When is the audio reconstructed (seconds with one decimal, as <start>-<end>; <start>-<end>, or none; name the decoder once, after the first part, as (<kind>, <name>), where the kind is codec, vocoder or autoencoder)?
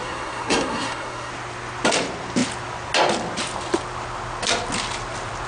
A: 0.0-1.3 (codec, SNAC)